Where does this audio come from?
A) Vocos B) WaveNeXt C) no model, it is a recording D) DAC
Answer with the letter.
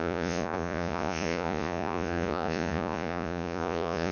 A